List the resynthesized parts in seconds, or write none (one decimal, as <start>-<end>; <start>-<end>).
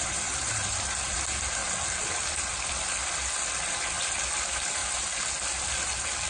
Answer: 0.0-1.6; 2.7-3.2; 4.0-4.8